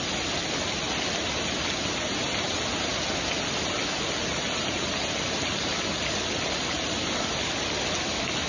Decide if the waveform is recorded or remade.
recorded